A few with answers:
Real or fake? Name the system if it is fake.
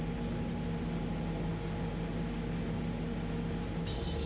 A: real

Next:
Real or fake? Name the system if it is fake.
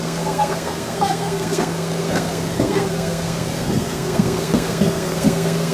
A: fake, codec, SNAC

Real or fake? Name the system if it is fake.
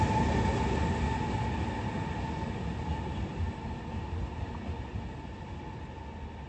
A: real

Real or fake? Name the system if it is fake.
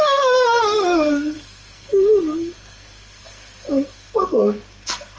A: fake, codec, SNAC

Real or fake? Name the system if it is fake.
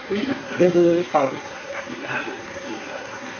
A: fake, codec, SNAC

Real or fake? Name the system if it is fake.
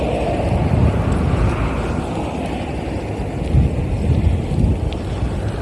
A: real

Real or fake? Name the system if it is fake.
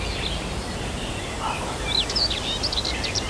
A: real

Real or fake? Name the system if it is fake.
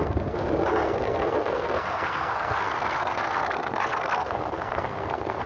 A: fake, codec, SNAC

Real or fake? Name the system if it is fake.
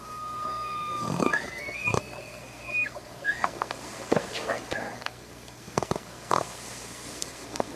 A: fake, codec, SNAC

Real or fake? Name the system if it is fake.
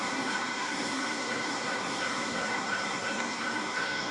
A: fake, codec, SNAC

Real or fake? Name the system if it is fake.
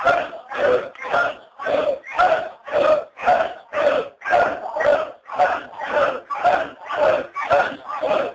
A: real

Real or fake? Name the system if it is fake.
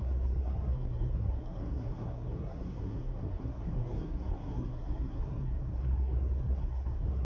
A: fake, codec, SNAC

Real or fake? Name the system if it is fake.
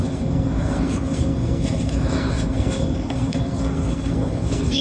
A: fake, codec, SNAC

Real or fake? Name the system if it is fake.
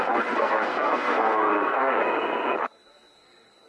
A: fake, codec, SNAC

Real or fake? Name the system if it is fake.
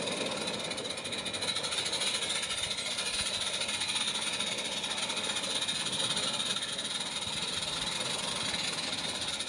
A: real